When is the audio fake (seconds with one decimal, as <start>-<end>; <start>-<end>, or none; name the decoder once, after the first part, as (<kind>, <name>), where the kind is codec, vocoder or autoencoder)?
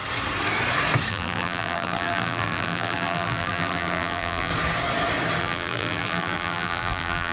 1.1-4.5 (vocoder, BigVGAN v2); 5.4-7.3